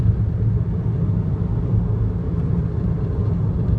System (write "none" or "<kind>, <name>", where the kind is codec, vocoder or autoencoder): none